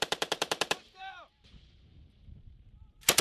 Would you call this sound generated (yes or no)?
yes